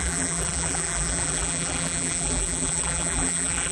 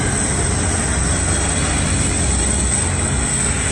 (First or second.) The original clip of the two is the second